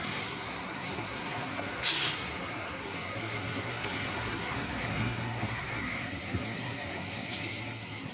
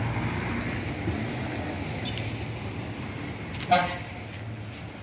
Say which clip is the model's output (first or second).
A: first